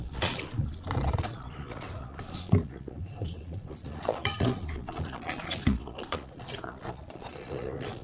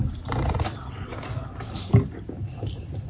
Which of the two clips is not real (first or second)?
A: first